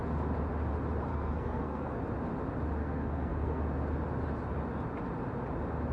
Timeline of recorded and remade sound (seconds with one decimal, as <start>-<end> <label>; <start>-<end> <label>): 0.0-1.1 recorded; 1.1-2.0 remade; 2.0-2.8 recorded; 2.8-3.6 remade; 3.6-5.9 recorded

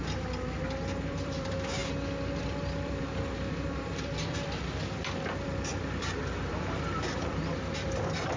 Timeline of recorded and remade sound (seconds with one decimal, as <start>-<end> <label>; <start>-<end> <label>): 0.0-1.8 remade; 1.8-2.4 recorded; 2.4-8.4 remade

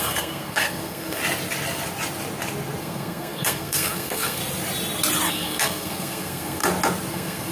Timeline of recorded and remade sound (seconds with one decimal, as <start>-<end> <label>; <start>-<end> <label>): 0.0-1.2 remade; 1.2-2.8 recorded; 2.8-4.4 remade; 4.4-5.3 recorded; 5.3-6.6 remade; 6.6-7.1 recorded; 7.1-7.5 remade

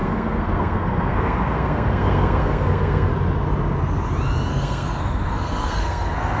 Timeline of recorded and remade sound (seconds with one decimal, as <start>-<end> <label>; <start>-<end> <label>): 0.0-3.1 remade; 3.1-4.5 recorded; 4.5-6.4 remade

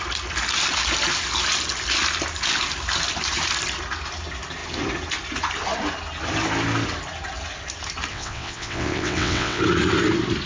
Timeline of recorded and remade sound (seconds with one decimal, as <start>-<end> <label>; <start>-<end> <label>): 0.0-8.1 recorded; 8.1-9.6 remade; 9.6-10.5 recorded

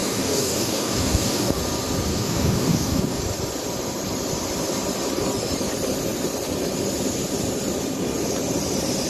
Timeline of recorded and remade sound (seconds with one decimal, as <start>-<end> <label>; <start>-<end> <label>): 0.0-1.6 remade; 1.6-2.1 recorded; 2.1-3.2 remade; 3.2-9.1 recorded

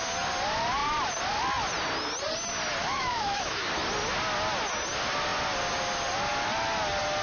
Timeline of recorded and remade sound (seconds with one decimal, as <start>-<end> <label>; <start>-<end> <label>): 0.0-2.8 recorded; 2.8-3.7 remade; 3.7-7.2 recorded

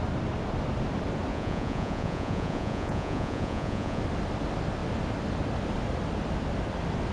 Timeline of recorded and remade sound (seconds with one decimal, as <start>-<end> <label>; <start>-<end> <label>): 0.0-1.3 recorded; 1.3-4.0 remade; 4.0-7.1 recorded